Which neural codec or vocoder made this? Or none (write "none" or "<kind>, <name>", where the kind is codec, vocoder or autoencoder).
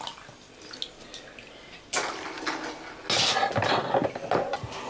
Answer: none